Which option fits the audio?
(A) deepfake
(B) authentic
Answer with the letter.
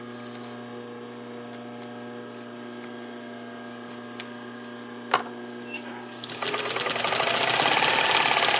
B